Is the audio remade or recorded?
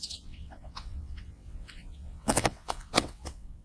remade